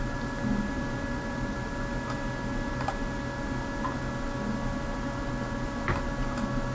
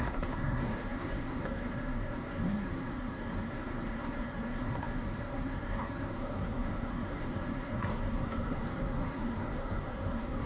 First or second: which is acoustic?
first